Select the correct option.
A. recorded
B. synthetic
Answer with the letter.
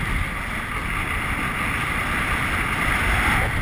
A